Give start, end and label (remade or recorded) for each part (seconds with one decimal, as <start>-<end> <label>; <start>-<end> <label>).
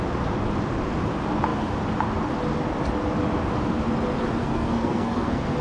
0.0-4.4 recorded; 4.4-5.6 remade